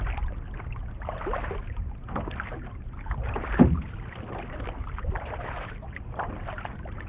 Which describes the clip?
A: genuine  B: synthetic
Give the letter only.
A